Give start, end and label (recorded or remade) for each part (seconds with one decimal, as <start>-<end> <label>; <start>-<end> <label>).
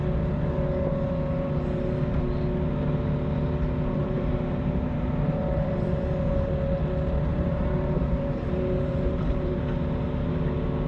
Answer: 0.0-4.0 recorded; 4.0-6.5 remade; 6.5-7.3 recorded; 7.3-9.6 remade; 9.6-10.9 recorded